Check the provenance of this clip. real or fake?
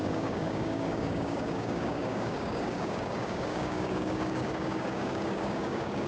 fake